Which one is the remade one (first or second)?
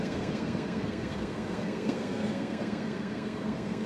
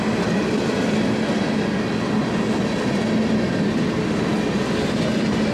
first